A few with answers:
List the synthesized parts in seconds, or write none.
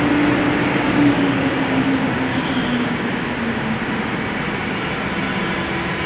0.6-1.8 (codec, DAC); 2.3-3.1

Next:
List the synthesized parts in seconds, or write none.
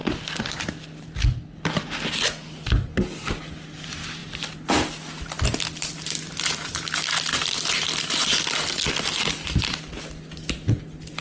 none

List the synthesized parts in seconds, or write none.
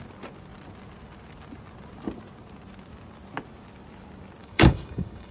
4.4-5.3 (codec, DAC)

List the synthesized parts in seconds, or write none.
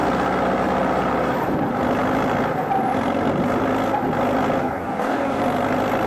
4.6-5.4 (codec, DAC)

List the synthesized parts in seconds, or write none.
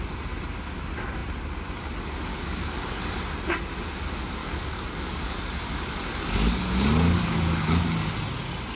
2.3-3.1 (codec, DAC); 4.4-8.1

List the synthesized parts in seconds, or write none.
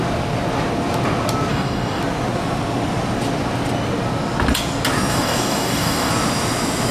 1.5-2.0 (codec, DAC); 5.1-6.1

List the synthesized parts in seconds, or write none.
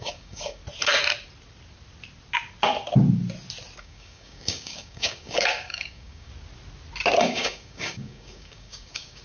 0.0-0.6 (codec, DAC); 3.8-6.3; 7.2-9.2